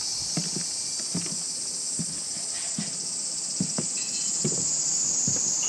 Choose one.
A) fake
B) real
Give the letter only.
B